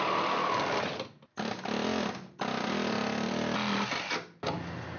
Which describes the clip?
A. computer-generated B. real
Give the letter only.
B